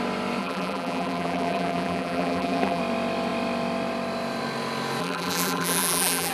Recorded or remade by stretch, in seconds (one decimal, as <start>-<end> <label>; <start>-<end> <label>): 0.0-0.4 recorded; 0.4-2.8 remade; 2.8-5.0 recorded; 5.0-6.3 remade